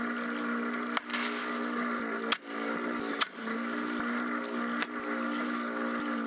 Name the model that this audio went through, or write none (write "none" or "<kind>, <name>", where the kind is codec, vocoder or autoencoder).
none